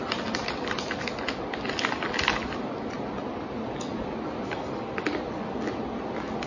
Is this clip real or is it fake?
real